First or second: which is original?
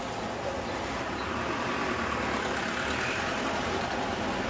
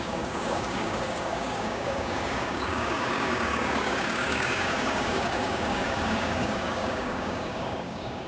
first